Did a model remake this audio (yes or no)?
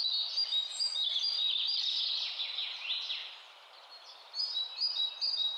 no